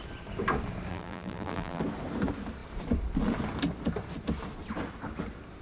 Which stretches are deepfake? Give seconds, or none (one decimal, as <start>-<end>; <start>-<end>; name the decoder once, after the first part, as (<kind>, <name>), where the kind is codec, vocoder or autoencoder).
0.9-1.8 (vocoder, BigVGAN v2)